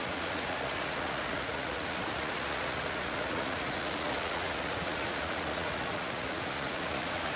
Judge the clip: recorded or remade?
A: remade